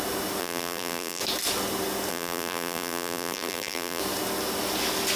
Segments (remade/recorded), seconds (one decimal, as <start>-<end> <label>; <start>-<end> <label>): 0.0-0.4 recorded; 0.4-1.2 remade; 1.2-2.1 recorded; 2.1-4.0 remade; 4.0-5.2 recorded